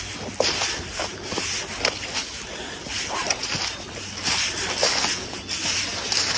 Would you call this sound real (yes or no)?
yes